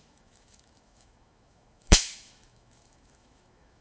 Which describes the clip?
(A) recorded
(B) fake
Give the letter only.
B